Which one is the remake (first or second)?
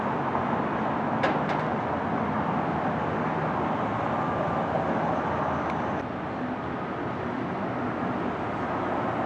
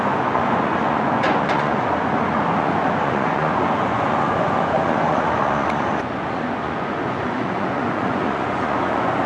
second